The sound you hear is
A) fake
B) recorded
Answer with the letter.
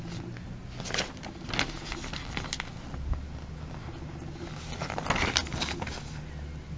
B